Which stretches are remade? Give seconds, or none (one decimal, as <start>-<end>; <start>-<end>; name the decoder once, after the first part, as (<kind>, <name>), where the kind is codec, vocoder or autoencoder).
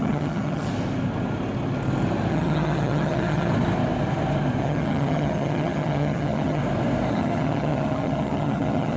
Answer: 0.0-0.7 (vocoder, HiFi-GAN); 2.3-3.5; 4.6-6.6; 7.1-9.0